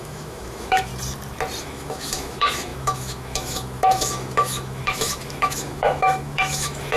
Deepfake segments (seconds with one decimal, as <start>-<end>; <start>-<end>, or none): 0.0-0.9; 1.6-7.0